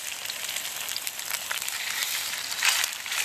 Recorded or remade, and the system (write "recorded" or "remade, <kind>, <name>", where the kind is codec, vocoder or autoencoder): remade, vocoder, BigVGAN v2